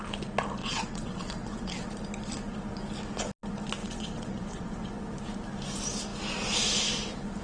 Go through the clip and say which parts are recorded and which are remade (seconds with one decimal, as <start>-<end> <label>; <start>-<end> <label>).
0.0-0.6 recorded; 0.6-1.9 remade; 1.9-3.8 recorded; 3.8-4.9 remade; 4.9-7.4 recorded